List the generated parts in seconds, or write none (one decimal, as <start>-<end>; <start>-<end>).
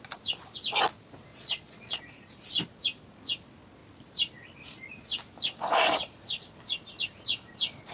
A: 1.3-2.0